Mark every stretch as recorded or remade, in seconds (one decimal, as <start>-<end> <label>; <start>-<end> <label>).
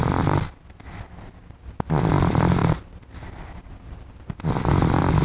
0.0-5.2 recorded